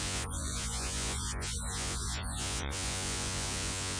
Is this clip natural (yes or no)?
no